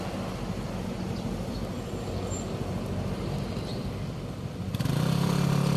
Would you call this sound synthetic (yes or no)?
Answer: no